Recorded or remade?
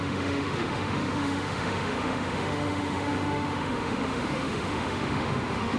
remade